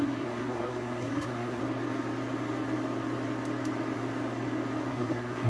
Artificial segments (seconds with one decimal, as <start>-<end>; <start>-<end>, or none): 0.0-1.6; 4.9-5.5